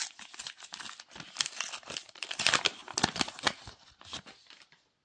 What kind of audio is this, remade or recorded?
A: recorded